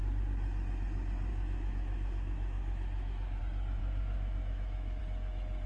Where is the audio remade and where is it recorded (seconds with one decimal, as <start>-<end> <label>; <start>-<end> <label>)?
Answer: 0.0-1.3 recorded; 1.3-3.4 remade; 3.4-3.8 recorded; 3.8-5.0 remade; 5.0-5.7 recorded